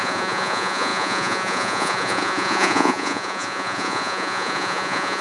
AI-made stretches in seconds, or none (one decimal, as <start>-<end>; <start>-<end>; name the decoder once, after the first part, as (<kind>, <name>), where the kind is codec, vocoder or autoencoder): 0.0-5.2 (vocoder, Vocos)